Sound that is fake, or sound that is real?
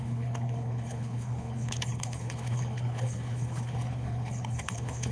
fake